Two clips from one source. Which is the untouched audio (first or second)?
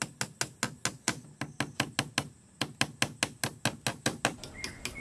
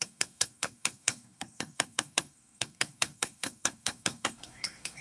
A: first